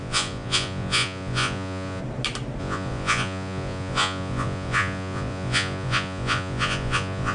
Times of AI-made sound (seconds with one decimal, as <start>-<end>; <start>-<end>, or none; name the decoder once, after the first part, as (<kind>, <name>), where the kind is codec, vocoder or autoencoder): 0.0-2.0 (vocoder, Vocos); 2.6-7.3